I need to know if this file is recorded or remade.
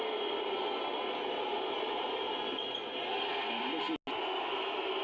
recorded